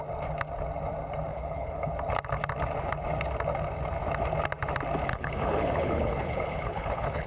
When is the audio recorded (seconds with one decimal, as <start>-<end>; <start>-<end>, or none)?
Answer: 0.0-1.3; 1.9-5.1